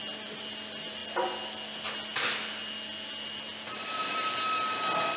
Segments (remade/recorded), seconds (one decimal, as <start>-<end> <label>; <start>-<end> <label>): 0.0-5.2 recorded